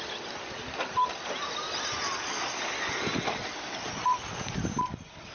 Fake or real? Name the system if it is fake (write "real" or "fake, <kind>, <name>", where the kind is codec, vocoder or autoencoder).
real